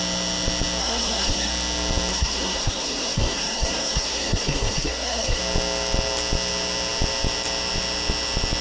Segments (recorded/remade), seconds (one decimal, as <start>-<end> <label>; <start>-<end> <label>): 0.0-0.8 recorded; 0.8-1.5 remade; 1.5-2.1 recorded; 2.1-5.4 remade; 5.4-8.6 recorded